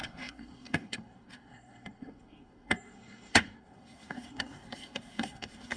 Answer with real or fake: fake